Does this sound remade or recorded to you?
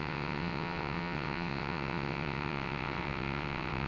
remade